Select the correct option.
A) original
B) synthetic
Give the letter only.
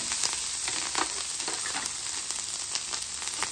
A